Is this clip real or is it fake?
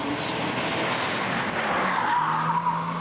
real